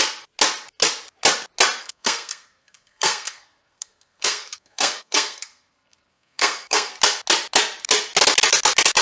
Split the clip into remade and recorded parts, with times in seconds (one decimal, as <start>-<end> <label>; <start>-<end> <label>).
0.0-1.8 recorded; 1.8-6.9 remade; 6.9-9.0 recorded